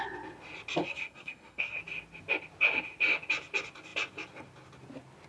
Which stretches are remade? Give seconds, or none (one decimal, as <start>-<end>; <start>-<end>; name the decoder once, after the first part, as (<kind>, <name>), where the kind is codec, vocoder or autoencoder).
0.8-1.8 (codec, SNAC)